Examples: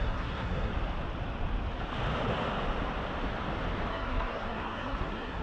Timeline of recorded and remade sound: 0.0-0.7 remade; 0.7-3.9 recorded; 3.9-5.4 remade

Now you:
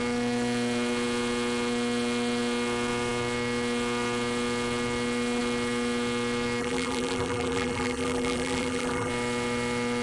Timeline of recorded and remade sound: 0.0-6.6 recorded; 6.6-9.1 remade; 9.1-10.0 recorded

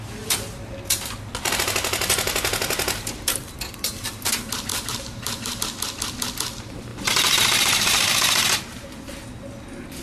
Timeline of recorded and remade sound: 0.0-4.7 recorded; 4.7-5.6 remade; 5.6-6.9 recorded; 6.9-9.1 remade; 9.1-10.0 recorded